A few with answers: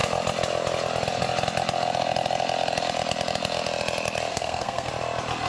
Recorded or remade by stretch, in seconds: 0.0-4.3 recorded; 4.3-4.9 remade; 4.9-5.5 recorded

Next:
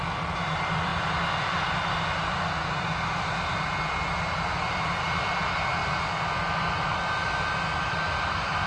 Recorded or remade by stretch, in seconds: 0.0-8.7 recorded